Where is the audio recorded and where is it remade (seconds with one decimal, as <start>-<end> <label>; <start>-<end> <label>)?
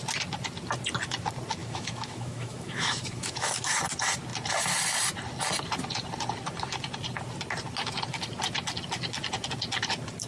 0.0-1.6 recorded; 1.6-3.8 remade; 3.8-10.3 recorded